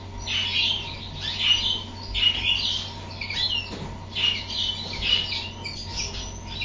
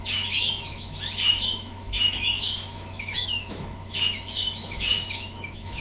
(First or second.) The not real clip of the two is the second